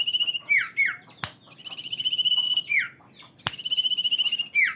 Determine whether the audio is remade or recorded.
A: recorded